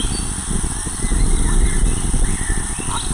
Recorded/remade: recorded